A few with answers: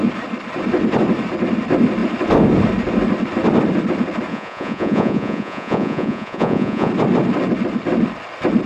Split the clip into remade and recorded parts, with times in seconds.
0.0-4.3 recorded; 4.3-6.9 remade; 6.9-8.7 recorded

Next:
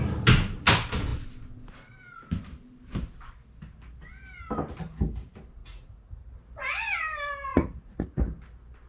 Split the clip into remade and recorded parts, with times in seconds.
0.0-5.6 recorded; 5.6-6.3 remade; 6.3-7.5 recorded; 7.5-8.2 remade; 8.2-8.9 recorded